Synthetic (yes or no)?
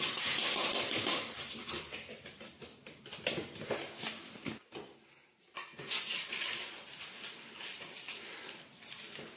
no